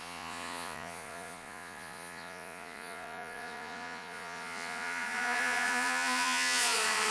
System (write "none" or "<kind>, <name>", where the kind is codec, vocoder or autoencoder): vocoder, Vocos